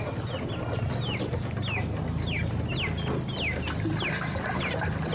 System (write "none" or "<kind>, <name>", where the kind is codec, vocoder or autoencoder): none